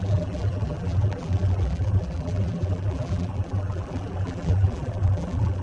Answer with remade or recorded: remade